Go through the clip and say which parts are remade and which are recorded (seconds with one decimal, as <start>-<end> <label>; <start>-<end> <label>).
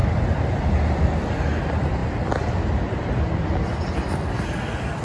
0.0-5.0 recorded